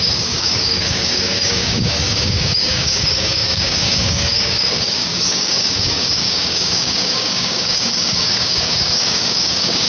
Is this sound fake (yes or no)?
yes